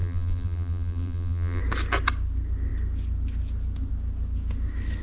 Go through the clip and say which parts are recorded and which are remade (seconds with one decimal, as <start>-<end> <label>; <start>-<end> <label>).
0.0-1.6 remade; 1.6-5.0 recorded